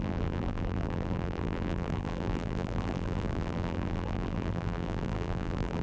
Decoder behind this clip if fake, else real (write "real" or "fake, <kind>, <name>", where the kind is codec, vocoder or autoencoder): fake, vocoder, BigVGAN v2